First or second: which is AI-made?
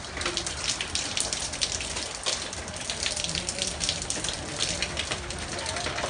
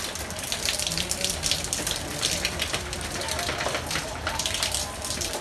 first